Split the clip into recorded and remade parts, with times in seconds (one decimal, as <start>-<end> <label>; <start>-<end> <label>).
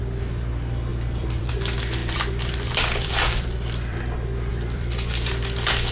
0.0-0.9 recorded; 0.9-1.5 remade; 1.5-2.0 recorded; 2.0-4.0 remade; 4.0-4.5 recorded; 4.5-5.9 remade